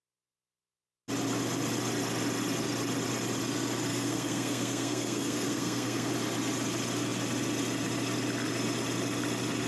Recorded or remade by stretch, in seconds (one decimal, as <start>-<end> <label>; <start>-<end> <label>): 0.0-3.9 recorded; 3.9-6.1 remade; 6.1-9.7 recorded

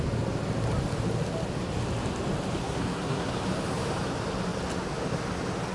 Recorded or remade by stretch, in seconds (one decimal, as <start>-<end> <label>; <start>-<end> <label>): 0.0-2.6 recorded; 2.6-3.3 remade; 3.3-5.7 recorded

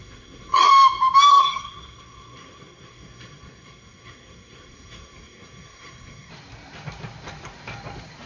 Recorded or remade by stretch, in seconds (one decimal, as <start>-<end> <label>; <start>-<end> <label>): 0.0-0.7 remade; 0.7-1.3 recorded; 1.3-6.3 remade; 6.3-8.3 recorded

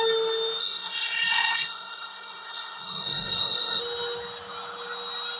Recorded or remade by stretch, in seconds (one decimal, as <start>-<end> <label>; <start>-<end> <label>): 0.0-0.6 recorded; 0.6-3.8 remade; 3.8-5.4 recorded

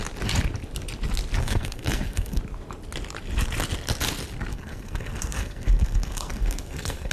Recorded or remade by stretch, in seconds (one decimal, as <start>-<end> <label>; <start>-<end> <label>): 0.0-1.4 recorded; 1.4-2.4 remade; 2.4-4.5 recorded; 4.5-7.1 remade